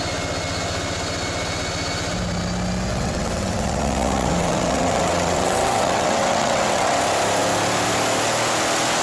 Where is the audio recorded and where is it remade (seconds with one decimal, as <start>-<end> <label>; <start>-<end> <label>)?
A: 0.0-2.9 recorded; 2.9-7.0 remade; 7.0-9.0 recorded